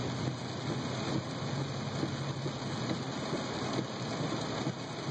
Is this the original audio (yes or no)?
yes